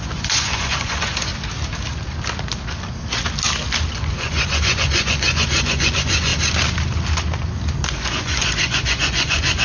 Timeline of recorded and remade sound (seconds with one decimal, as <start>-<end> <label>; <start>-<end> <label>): 0.0-1.3 remade; 1.3-3.9 recorded; 3.9-6.3 remade; 6.3-7.9 recorded; 7.9-9.6 remade